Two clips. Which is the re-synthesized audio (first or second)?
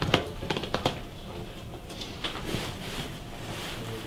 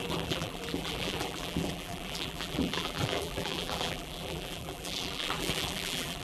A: second